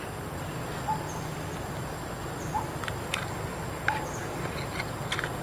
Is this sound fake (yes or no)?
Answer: no